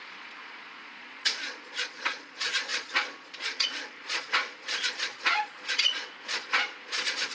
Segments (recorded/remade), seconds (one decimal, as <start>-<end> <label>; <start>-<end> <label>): 0.0-7.3 remade